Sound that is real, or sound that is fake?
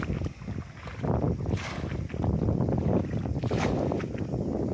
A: real